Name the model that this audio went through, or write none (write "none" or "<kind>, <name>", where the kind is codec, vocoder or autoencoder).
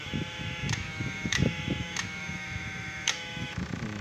autoencoder, DAC-VAE